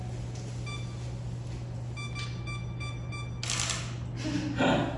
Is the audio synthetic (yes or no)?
no